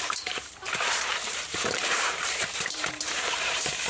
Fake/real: fake